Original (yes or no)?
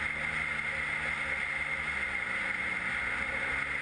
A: yes